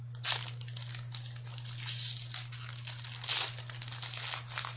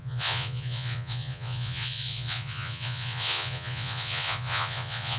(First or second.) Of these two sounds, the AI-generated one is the second